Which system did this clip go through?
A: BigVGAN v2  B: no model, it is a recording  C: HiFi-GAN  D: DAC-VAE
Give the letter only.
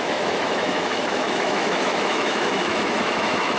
D